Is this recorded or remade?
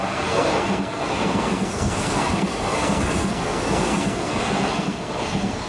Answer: remade